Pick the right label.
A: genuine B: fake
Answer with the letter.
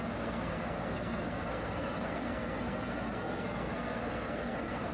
B